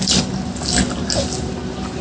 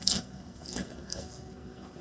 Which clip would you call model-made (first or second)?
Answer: second